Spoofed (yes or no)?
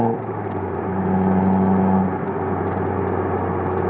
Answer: no